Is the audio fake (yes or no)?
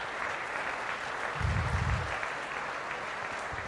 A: no